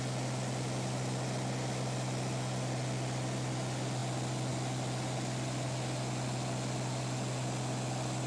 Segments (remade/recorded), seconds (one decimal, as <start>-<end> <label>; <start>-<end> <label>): 0.0-8.3 recorded

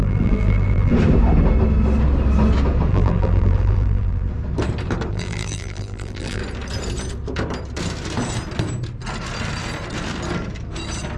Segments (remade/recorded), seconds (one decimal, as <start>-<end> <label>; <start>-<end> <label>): 0.0-0.9 remade; 0.9-2.9 recorded; 2.9-4.3 remade; 4.3-5.1 recorded; 5.1-6.4 remade; 6.4-11.2 recorded

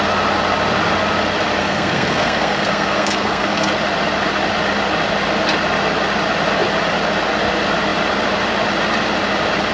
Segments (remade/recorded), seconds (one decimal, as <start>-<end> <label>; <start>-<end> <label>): 0.0-1.6 recorded; 1.6-3.7 remade; 3.7-9.7 recorded

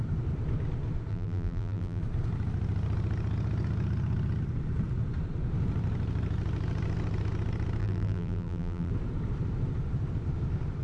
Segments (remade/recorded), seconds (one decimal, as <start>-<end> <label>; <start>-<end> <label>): 0.0-1.1 recorded; 1.1-2.0 remade; 2.0-7.8 recorded; 7.8-8.9 remade; 8.9-10.8 recorded

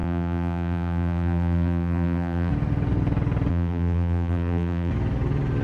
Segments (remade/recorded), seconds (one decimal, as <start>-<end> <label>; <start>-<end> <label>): 0.0-2.5 remade; 2.5-3.5 recorded; 3.5-4.9 remade; 4.9-5.6 recorded